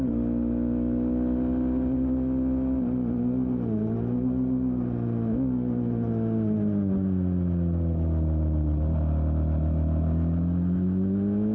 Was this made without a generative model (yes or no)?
yes